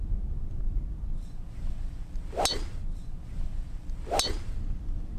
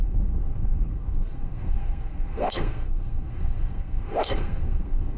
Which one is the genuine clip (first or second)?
first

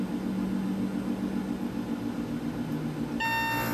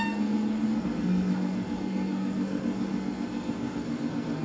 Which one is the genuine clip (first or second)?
first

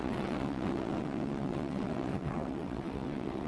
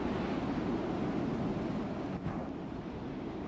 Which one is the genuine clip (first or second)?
second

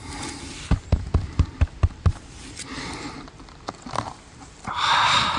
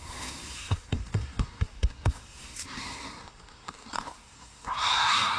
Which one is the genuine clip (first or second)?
first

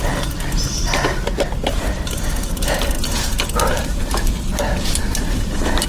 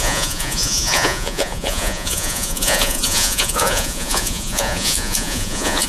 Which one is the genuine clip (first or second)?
first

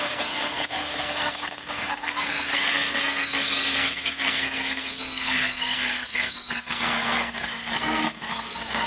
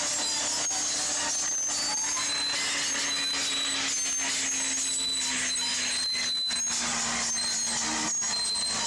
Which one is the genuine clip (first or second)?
second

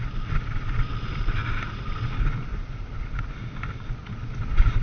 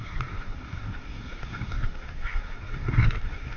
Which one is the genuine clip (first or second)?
first